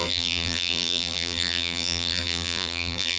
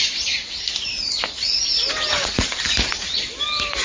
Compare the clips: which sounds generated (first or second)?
first